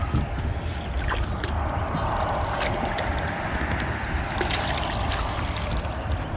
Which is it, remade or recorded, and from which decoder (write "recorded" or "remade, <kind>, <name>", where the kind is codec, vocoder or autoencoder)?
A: recorded